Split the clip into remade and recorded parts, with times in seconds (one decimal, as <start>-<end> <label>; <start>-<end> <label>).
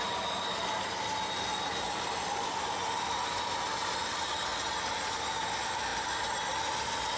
0.0-7.2 recorded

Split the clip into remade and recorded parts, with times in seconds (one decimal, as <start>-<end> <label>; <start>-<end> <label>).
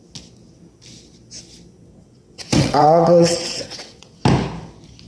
0.0-1.9 recorded; 1.9-4.2 remade; 4.2-5.1 recorded